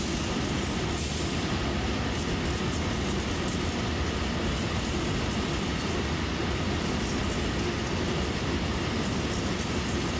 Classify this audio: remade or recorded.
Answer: recorded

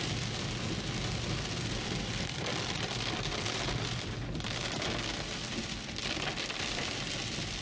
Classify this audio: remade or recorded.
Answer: recorded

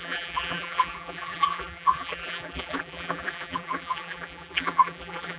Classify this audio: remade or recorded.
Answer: remade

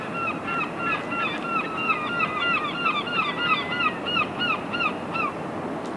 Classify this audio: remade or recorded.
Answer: recorded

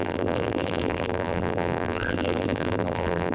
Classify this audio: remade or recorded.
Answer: remade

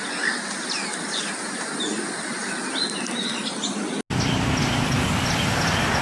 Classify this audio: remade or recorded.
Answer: recorded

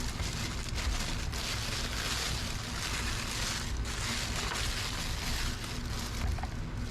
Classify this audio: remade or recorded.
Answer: recorded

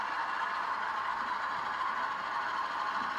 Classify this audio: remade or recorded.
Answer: recorded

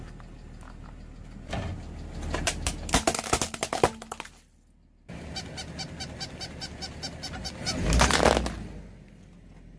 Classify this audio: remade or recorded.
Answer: recorded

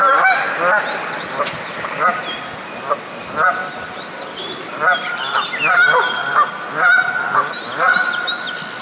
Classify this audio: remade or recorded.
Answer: recorded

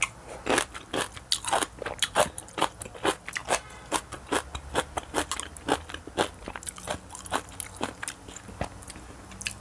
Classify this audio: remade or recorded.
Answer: recorded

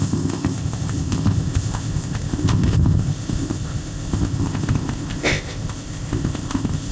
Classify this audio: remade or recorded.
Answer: remade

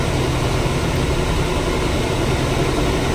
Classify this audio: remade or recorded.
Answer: recorded